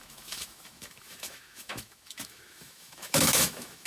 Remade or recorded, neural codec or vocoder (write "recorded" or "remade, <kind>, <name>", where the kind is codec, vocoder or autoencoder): remade, autoencoder, DAC-VAE